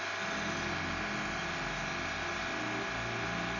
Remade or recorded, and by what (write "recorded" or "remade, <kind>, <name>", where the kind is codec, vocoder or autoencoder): recorded